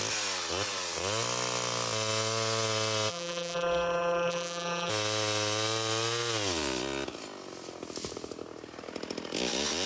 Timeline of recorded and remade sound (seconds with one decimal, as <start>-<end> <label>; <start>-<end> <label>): 0.0-3.1 recorded; 3.1-4.9 remade; 4.9-9.9 recorded